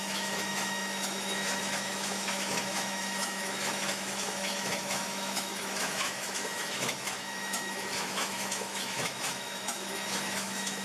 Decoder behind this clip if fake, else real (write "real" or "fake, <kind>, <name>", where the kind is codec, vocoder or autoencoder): fake, autoencoder, DAC-VAE